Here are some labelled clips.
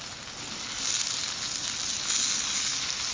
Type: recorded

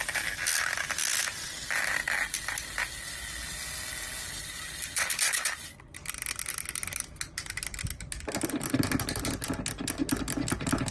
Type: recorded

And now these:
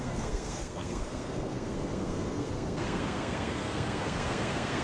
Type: remade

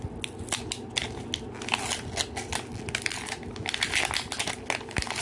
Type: recorded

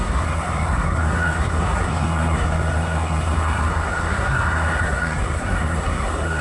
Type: remade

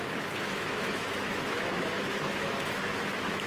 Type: remade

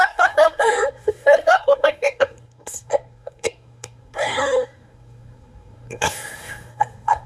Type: remade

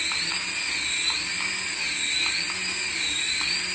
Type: recorded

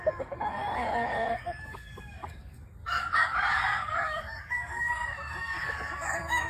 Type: remade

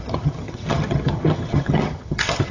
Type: remade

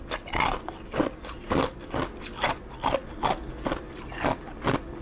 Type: recorded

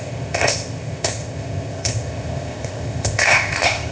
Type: remade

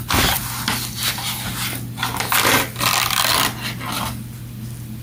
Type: remade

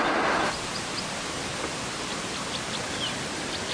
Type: recorded